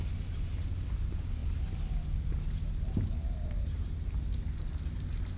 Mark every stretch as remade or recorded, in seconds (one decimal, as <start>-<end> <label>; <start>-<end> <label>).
0.0-5.4 recorded